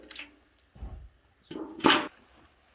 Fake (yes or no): no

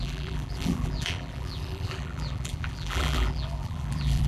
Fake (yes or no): yes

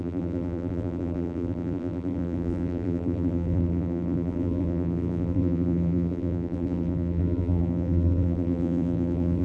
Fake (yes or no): yes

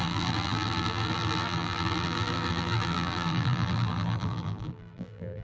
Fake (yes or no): yes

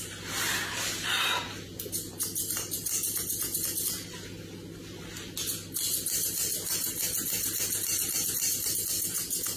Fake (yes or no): no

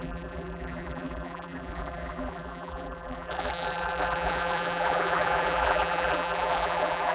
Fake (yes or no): yes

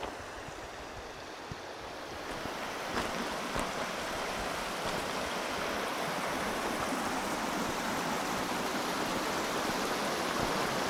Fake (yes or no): no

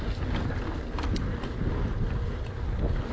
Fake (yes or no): no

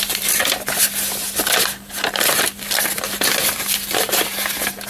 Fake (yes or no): yes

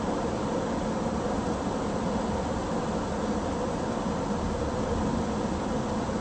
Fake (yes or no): no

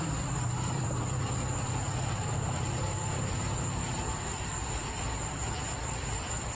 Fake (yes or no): yes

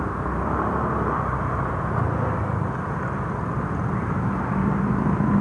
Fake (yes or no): no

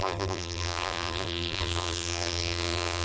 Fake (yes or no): yes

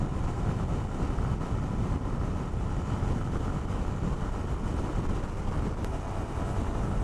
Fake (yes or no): no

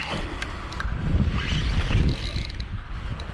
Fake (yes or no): no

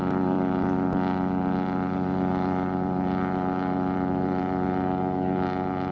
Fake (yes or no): yes